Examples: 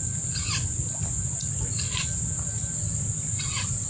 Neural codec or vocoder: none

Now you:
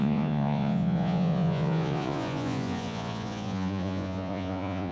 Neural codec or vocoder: vocoder, Vocos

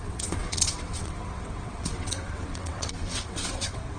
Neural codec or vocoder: vocoder, WaveNeXt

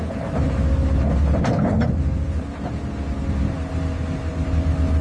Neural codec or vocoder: none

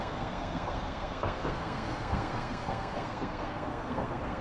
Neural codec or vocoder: codec, SNAC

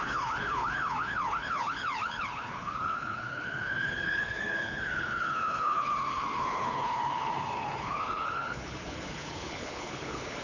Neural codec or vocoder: codec, HILCodec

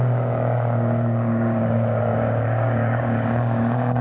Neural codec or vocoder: codec, DAC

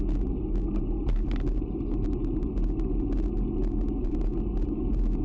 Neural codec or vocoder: none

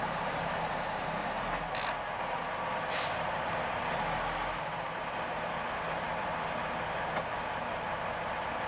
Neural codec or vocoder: none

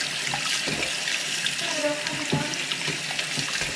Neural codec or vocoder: none